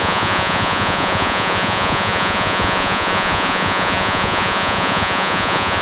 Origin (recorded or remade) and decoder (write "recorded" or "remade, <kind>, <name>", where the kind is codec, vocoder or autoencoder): remade, vocoder, Vocos